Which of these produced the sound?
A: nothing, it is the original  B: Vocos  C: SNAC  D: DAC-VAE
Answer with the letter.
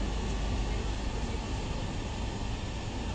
A